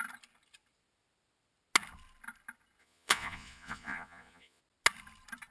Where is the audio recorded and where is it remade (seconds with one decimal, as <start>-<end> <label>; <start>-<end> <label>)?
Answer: 0.0-2.8 recorded; 2.8-4.6 remade; 4.6-5.5 recorded